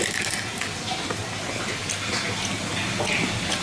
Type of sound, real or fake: real